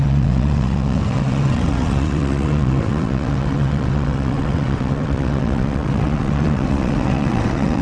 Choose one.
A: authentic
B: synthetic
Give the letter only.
B